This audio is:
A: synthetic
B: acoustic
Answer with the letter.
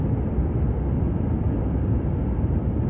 B